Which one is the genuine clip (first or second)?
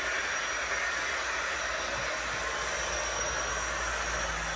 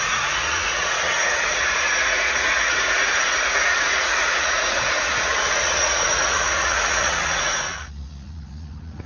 first